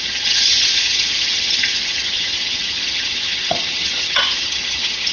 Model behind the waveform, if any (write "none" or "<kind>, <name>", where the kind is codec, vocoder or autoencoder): vocoder, HiFi-GAN